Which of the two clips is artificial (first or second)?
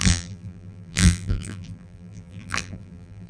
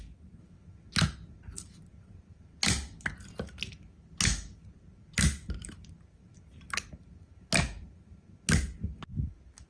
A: first